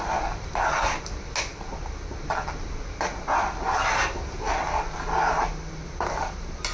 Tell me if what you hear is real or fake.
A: real